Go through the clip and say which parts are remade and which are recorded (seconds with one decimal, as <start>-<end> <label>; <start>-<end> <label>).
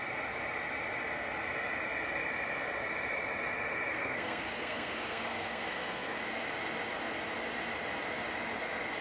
0.0-3.9 recorded; 3.9-6.2 remade; 6.2-9.0 recorded